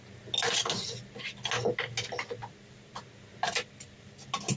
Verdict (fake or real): real